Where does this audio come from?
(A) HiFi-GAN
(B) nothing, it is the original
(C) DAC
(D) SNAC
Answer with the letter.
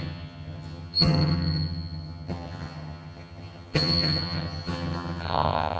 A